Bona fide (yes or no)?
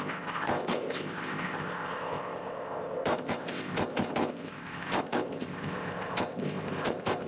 no